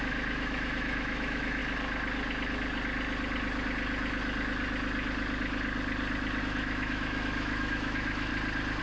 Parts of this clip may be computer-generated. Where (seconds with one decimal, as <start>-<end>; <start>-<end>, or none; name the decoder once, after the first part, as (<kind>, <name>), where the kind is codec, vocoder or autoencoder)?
0.0-1.6 (autoencoder, DAC-VAE); 6.4-8.3